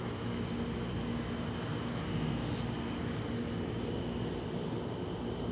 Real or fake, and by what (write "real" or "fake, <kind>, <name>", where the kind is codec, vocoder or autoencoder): real